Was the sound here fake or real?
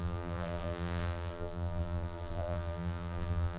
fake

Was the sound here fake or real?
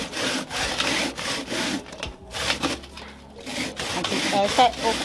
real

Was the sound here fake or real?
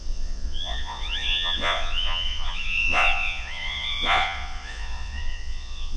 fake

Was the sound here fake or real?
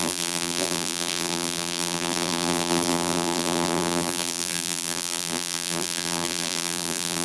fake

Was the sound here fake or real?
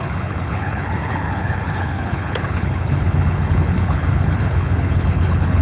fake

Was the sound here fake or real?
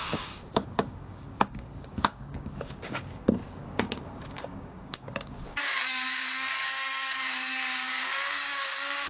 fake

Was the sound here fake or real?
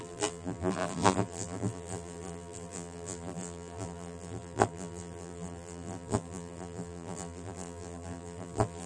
fake